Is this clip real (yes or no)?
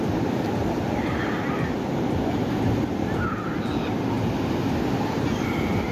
yes